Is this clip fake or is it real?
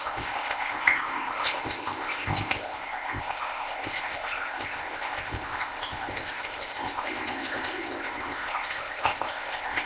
fake